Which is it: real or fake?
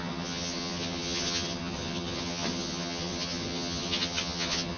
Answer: fake